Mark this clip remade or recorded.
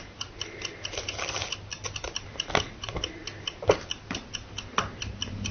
recorded